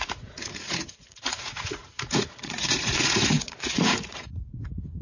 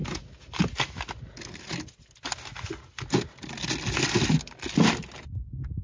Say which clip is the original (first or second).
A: second